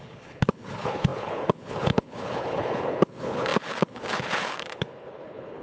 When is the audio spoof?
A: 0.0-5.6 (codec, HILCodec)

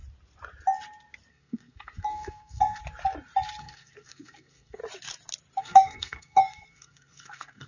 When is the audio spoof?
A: 1.3-2.8 (codec, SNAC); 3.6-4.8; 5.6-7.7

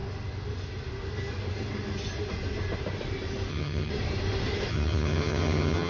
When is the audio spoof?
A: 3.5-3.9 (vocoder, HiFi-GAN); 4.7-5.9